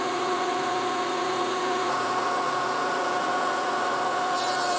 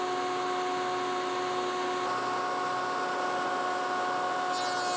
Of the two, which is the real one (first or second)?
second